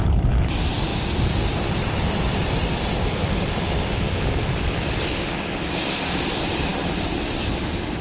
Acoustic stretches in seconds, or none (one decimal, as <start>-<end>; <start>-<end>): 0.9-1.5